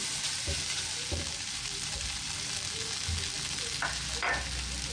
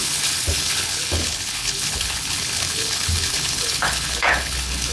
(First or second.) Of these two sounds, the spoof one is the second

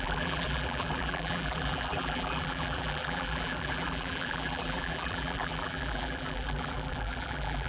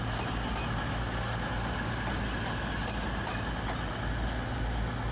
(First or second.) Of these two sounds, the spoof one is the first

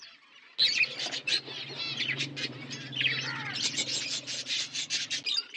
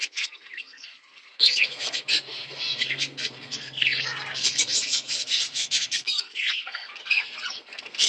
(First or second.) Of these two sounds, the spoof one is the second